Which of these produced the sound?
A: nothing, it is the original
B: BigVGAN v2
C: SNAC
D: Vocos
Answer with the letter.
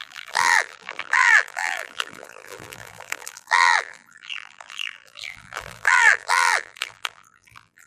B